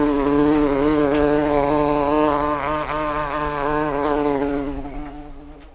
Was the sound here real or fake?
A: real